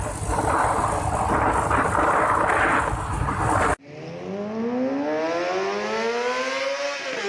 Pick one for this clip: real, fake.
real